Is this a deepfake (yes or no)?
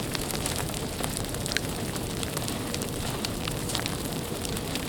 yes